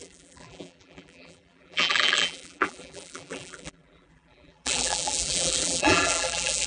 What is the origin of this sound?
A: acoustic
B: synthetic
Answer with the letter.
B